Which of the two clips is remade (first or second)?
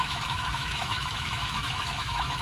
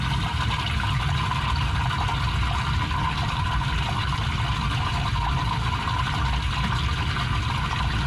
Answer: first